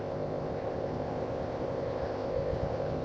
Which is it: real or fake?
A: fake